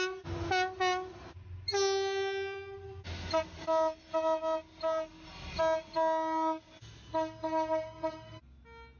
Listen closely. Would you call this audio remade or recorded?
recorded